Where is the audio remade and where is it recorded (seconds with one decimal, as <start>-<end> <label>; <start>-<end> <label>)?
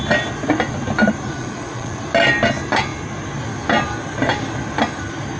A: 0.0-1.4 recorded; 1.4-2.0 remade; 2.0-5.4 recorded